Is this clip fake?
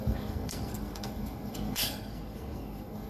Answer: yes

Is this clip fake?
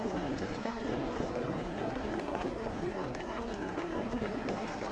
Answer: yes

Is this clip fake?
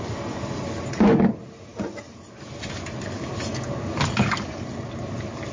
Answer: no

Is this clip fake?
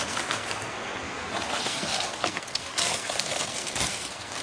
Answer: yes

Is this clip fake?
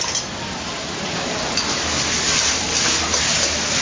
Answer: no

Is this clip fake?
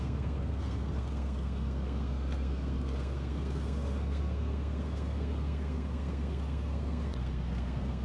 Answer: yes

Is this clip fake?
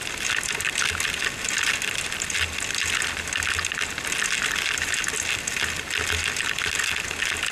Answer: no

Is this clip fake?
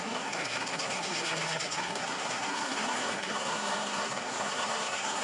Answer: yes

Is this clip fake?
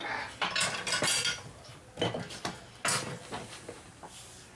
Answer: no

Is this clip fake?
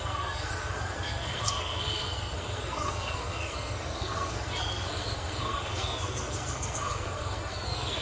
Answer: yes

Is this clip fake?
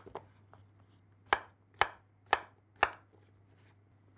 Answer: no